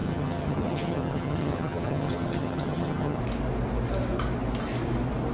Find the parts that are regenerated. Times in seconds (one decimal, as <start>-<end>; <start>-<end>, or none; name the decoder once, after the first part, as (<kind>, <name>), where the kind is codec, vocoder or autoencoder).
0.0-3.2 (vocoder, HiFi-GAN)